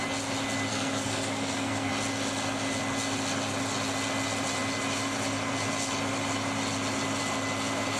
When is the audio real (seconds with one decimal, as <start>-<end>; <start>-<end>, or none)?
0.0-0.7; 1.9-8.0

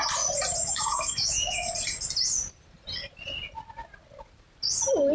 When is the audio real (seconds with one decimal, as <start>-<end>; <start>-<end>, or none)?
0.0-0.6; 1.7-5.1

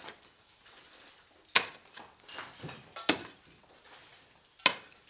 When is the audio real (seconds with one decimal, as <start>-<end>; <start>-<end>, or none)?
0.0-5.1

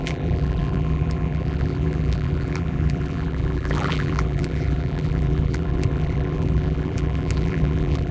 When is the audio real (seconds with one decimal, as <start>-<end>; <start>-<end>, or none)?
none

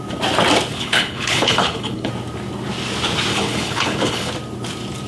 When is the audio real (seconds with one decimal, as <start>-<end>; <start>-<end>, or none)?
0.0-0.7; 2.1-3.3; 4.3-5.1

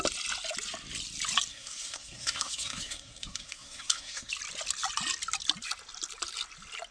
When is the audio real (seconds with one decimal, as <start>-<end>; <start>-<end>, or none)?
0.0-1.5; 4.3-6.9